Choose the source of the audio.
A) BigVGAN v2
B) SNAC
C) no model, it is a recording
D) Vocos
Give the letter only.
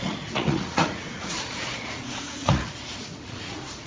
D